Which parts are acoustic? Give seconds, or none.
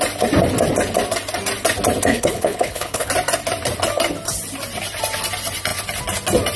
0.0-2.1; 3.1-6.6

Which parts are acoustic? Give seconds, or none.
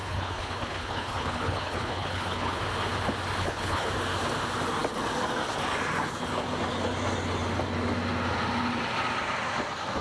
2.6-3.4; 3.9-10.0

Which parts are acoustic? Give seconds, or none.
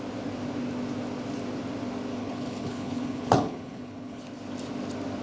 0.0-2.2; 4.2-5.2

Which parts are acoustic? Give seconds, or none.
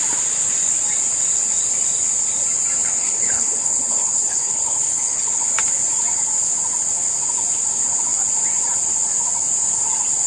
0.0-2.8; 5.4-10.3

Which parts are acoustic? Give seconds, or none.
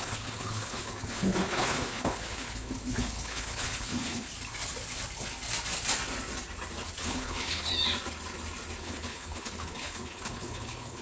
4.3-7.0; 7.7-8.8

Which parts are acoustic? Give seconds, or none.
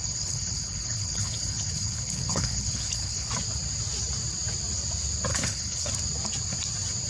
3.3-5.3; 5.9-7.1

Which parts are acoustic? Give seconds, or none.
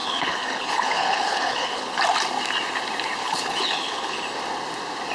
2.0-3.2; 4.2-5.1